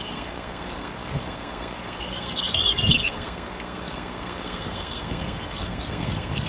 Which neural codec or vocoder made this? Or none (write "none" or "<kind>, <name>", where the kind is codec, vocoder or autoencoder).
codec, SNAC